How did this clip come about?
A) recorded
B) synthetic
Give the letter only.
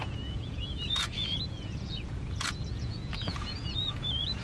B